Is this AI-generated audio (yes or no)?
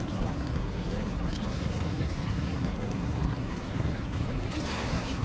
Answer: yes